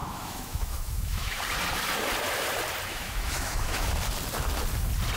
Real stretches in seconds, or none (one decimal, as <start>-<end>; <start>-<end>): 1.4-2.9; 3.9-5.2